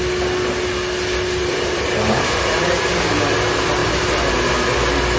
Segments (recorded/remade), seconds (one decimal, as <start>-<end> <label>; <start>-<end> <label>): 0.0-1.4 recorded; 1.4-3.2 remade; 3.2-3.8 recorded; 3.8-4.3 remade; 4.3-5.2 recorded